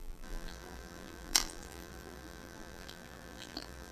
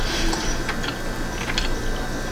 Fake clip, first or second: first